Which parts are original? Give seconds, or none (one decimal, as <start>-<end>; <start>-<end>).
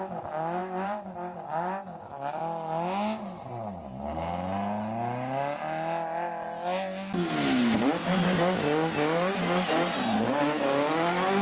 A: 0.0-0.6; 2.4-11.4